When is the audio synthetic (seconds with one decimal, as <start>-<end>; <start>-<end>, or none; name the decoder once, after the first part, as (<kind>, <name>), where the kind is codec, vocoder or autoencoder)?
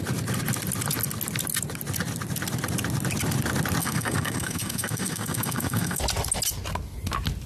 3.8-6.0 (codec, SNAC)